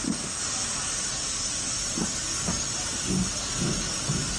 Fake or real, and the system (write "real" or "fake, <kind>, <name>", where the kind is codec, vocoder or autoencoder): real